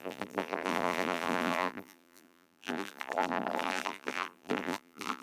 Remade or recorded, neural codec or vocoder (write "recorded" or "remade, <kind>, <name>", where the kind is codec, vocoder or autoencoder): remade, vocoder, BigVGAN v2